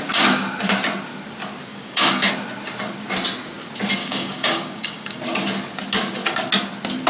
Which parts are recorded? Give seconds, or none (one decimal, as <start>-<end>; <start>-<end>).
0.0-1.7; 2.3-4.0; 5.2-7.1